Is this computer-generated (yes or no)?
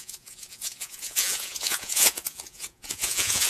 yes